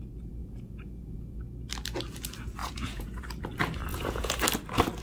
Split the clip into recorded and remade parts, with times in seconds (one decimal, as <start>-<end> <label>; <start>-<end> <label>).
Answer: 0.0-0.4 recorded; 0.4-1.4 remade; 1.4-2.6 recorded; 2.6-3.2 remade; 3.2-3.9 recorded; 3.9-4.4 remade; 4.4-5.0 recorded